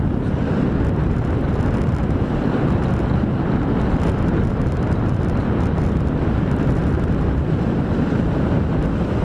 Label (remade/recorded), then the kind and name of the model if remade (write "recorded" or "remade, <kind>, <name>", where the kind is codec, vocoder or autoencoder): recorded